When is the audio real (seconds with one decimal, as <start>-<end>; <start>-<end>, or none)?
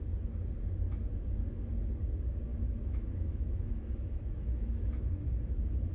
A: 0.0-2.5; 4.9-5.9